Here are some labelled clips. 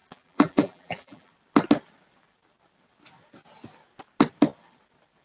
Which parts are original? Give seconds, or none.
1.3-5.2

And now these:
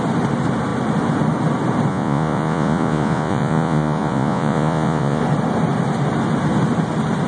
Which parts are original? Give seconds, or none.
0.0-1.9; 5.2-7.3

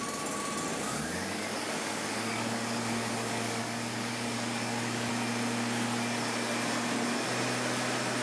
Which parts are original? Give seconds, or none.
0.0-0.7; 5.1-8.2